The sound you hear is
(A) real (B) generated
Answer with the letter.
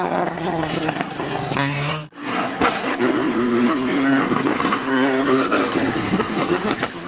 B